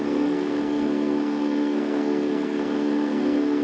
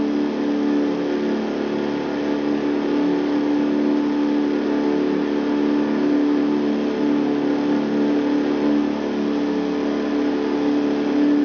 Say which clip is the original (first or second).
second